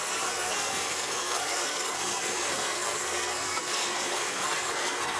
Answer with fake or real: fake